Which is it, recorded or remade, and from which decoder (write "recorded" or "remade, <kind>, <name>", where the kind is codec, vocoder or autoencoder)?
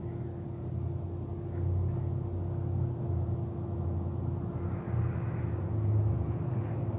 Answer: recorded